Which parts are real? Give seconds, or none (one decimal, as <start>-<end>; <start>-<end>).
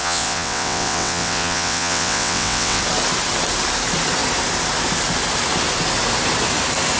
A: 2.8-7.0